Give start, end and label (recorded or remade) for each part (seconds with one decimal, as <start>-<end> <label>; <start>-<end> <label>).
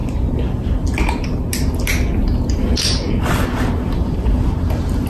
0.0-5.1 recorded